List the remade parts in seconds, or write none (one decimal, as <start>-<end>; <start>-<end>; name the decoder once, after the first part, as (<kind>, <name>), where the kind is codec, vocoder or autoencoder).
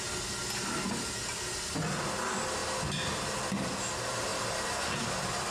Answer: none